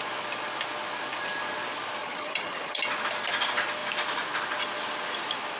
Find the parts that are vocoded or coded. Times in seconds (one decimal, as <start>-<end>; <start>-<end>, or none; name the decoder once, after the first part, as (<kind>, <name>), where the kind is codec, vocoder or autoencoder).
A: 2.0-2.8 (vocoder, HiFi-GAN)